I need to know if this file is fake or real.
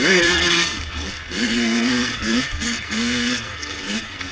fake